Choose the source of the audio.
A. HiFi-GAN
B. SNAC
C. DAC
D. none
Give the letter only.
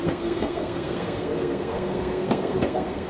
B